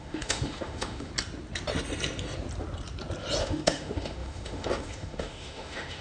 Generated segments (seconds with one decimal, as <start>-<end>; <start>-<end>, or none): 0.0-1.1; 3.4-6.0

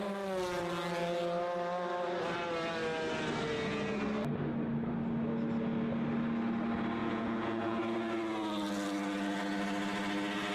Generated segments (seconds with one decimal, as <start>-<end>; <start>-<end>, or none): 7.0-7.8

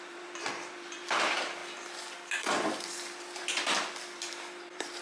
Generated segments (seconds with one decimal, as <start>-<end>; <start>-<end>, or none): 0.0-5.0

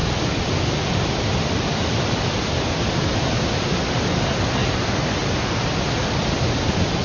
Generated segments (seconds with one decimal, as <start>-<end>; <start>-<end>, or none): 0.0-4.2

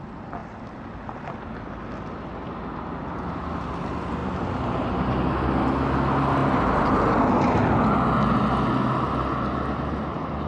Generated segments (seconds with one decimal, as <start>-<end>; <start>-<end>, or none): none

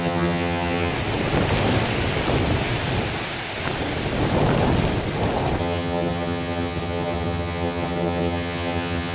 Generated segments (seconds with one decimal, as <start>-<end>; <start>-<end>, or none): 0.0-0.9; 5.6-9.1